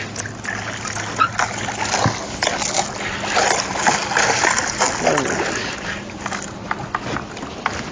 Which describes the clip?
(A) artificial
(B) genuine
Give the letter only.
B